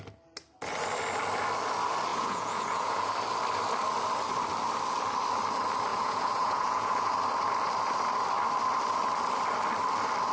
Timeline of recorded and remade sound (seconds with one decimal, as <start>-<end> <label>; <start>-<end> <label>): 0.0-2.1 recorded; 2.1-3.1 remade; 3.1-5.9 recorded; 5.9-7.1 remade; 7.1-10.3 recorded